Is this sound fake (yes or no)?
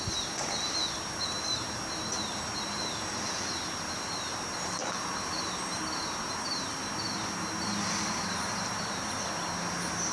no